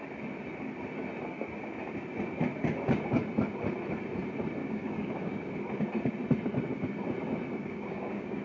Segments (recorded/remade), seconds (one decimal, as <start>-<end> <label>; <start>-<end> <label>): 0.0-4.6 recorded; 4.6-5.5 remade; 5.5-7.6 recorded; 7.6-8.4 remade